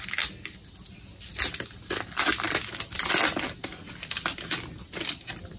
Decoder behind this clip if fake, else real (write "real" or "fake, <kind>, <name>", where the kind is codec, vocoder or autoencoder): real